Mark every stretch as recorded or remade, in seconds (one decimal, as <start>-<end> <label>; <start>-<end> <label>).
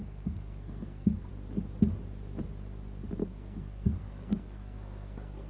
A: 0.0-1.3 remade; 1.3-3.2 recorded; 3.2-5.5 remade